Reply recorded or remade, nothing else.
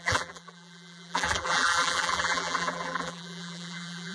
remade